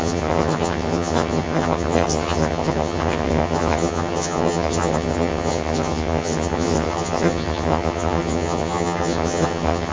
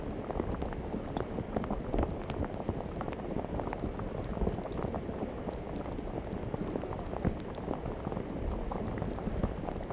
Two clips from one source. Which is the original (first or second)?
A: second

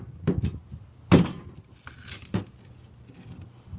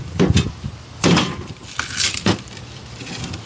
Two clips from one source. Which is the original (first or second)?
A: first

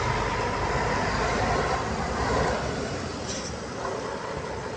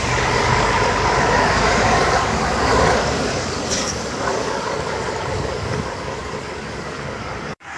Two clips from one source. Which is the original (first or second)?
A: first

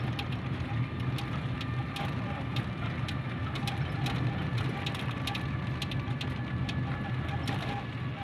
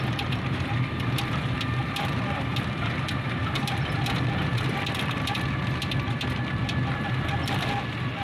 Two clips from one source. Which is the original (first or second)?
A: first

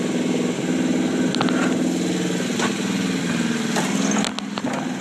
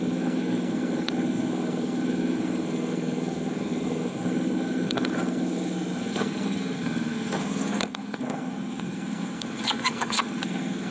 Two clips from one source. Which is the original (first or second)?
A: first